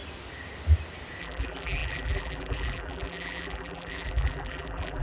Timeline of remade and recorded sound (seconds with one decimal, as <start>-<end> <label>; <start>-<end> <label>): 0.0-1.2 recorded; 1.2-5.0 remade